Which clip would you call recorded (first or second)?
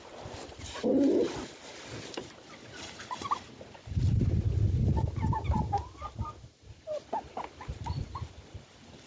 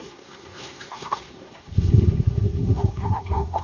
first